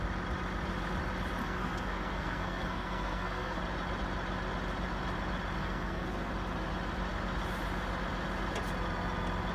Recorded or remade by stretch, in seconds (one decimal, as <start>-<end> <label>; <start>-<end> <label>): 0.0-1.4 recorded; 1.4-3.6 remade; 3.6-5.6 recorded; 5.6-6.3 remade; 6.3-9.5 recorded